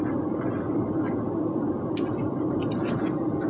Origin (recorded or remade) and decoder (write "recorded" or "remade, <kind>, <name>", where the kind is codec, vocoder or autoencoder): recorded